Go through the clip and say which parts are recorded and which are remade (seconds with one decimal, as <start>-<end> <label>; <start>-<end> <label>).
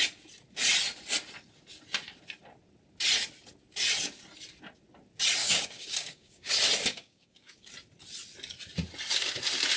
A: 0.0-5.4 recorded; 5.4-6.5 remade; 6.5-6.9 recorded; 6.9-7.7 remade; 7.7-9.8 recorded